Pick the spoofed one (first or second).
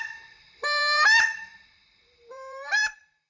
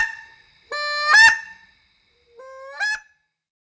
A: first